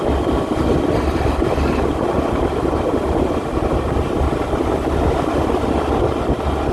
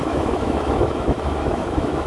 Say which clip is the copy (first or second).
second